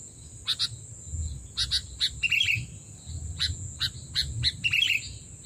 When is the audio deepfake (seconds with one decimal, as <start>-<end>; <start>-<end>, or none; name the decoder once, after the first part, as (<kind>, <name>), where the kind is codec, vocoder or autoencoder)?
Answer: none